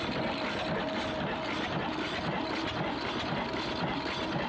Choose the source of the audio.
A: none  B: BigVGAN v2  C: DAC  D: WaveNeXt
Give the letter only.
A